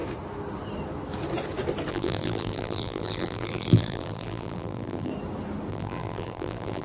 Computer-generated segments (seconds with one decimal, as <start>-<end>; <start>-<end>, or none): 1.9-5.1; 5.7-6.8